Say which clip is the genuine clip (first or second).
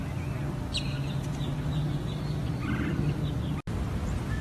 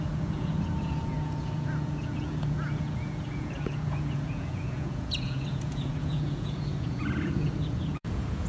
first